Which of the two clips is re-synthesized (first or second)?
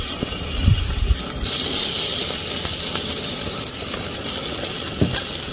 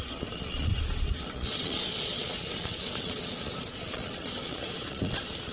second